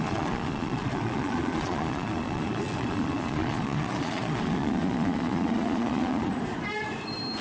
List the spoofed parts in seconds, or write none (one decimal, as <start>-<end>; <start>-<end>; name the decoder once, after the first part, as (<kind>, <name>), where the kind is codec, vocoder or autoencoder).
0.0-6.3 (vocoder, Vocos)